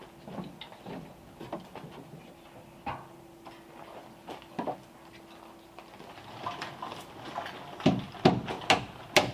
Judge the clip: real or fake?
real